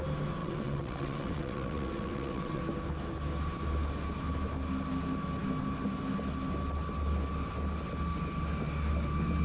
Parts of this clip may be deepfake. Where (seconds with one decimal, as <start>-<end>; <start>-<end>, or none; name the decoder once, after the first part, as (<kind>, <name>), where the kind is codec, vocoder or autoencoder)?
0.4-2.6 (vocoder, WaveNeXt)